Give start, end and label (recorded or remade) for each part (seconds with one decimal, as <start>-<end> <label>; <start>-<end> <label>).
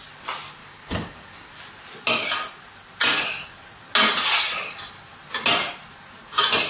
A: 0.0-0.6 recorded; 0.6-1.5 remade; 1.5-6.7 recorded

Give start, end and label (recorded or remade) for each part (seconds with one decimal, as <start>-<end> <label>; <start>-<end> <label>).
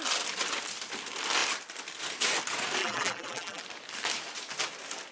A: 0.0-2.8 recorded; 2.8-3.6 remade; 3.6-5.1 recorded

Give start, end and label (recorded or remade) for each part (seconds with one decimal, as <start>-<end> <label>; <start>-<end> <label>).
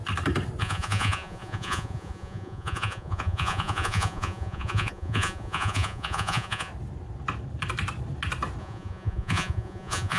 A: 0.0-0.6 recorded; 0.6-6.7 remade; 6.7-8.6 recorded; 8.6-10.2 remade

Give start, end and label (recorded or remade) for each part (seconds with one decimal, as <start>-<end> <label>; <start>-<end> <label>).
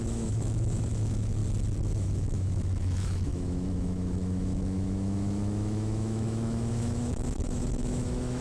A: 0.0-1.4 remade; 1.4-1.9 recorded; 1.9-8.4 remade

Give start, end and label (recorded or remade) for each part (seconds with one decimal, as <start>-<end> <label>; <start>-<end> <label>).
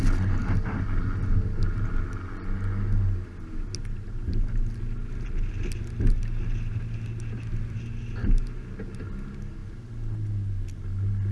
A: 0.0-11.3 recorded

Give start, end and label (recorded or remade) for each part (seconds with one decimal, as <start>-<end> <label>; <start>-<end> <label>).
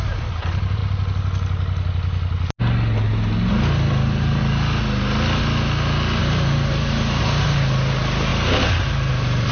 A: 0.0-0.8 remade; 0.8-3.5 recorded; 3.5-4.4 remade; 4.4-6.2 recorded; 6.2-9.5 remade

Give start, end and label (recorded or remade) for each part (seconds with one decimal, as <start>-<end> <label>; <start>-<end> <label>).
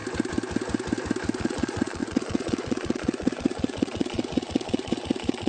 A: 0.0-1.4 recorded; 1.4-5.5 remade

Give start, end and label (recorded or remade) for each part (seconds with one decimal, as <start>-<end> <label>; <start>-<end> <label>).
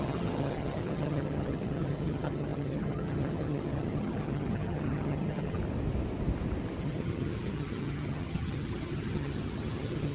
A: 0.0-5.6 remade; 5.6-6.8 recorded; 6.8-10.1 remade